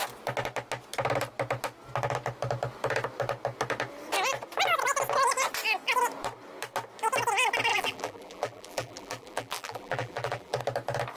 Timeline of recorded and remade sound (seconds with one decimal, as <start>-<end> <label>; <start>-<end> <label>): 0.0-7.7 recorded; 7.7-10.6 remade; 10.6-11.2 recorded

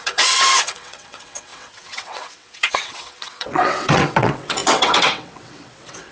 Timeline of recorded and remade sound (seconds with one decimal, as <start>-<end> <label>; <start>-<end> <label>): 0.0-6.1 remade